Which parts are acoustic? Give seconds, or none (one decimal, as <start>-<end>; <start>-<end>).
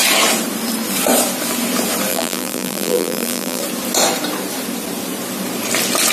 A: 0.0-2.1; 3.6-6.1